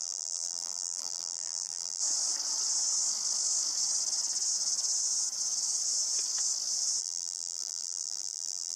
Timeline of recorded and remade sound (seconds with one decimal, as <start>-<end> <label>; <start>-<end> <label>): 0.0-2.0 remade; 2.0-7.0 recorded; 7.0-8.8 remade

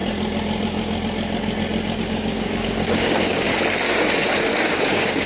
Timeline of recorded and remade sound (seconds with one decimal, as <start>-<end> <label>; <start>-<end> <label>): 0.0-2.0 recorded; 2.0-3.5 remade; 3.5-4.4 recorded; 4.4-5.3 remade